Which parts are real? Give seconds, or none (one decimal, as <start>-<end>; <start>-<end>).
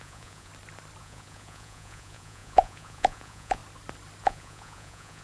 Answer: 0.5-1.0; 3.6-4.2